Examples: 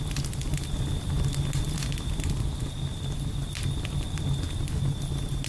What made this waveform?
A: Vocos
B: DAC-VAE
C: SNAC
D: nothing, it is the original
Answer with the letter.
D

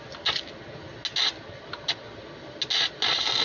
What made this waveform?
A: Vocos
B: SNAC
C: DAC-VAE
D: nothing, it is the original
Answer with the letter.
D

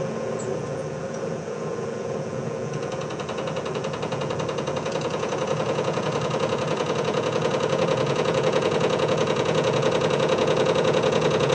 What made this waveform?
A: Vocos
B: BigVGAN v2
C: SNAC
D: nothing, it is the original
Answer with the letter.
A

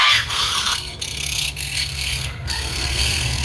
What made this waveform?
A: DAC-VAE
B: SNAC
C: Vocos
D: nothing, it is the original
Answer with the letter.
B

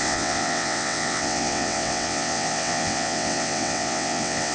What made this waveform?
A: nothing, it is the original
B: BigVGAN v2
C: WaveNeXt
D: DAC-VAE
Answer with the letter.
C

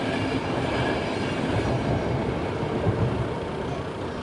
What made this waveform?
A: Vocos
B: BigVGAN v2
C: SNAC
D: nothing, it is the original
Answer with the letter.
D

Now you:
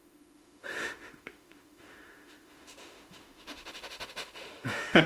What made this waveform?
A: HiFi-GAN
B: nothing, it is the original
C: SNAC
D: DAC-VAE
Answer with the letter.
D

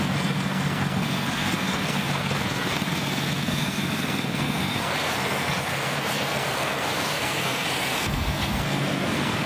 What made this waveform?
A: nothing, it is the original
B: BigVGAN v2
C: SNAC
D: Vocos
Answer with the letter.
C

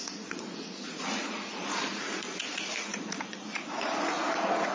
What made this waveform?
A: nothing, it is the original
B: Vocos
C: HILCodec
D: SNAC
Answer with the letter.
B